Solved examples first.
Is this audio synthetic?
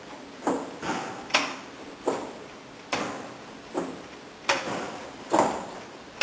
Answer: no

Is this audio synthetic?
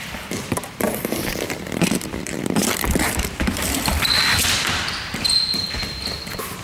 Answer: yes